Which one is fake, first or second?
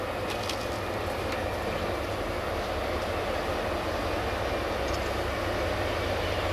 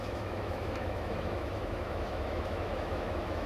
second